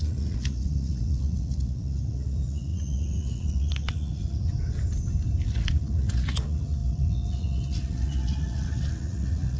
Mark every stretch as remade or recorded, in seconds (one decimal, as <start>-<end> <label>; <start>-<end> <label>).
0.0-4.5 remade; 4.5-5.5 recorded; 5.5-9.6 remade